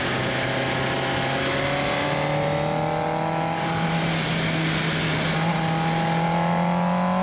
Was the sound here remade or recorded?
recorded